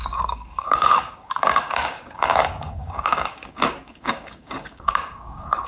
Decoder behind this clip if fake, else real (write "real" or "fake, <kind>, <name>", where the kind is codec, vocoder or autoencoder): fake, codec, DAC